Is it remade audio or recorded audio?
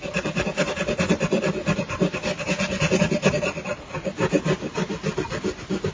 recorded